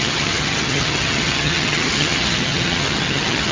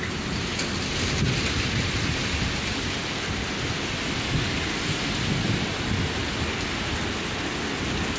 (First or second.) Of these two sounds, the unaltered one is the second